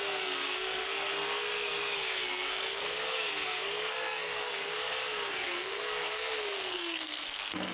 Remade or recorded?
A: remade